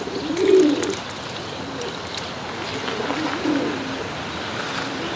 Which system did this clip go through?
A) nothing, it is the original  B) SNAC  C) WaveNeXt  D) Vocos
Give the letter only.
A